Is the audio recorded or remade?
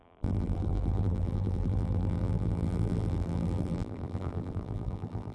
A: remade